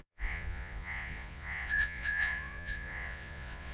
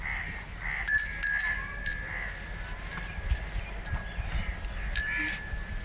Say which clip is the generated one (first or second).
first